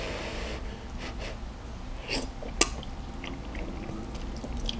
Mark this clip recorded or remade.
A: recorded